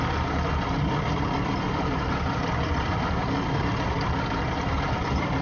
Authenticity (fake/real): fake